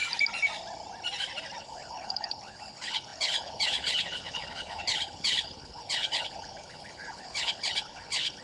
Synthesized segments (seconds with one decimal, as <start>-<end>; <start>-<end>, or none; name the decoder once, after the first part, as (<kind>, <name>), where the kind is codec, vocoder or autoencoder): 1.6-8.4 (codec, HILCodec)